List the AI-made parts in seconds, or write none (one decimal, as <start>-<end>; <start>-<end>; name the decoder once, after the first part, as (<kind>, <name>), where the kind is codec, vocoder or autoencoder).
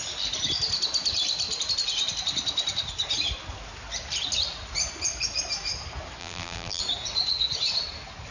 6.2-6.8 (vocoder, BigVGAN v2)